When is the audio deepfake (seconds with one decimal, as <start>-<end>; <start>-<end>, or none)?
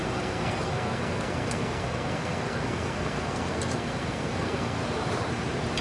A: 0.0-4.8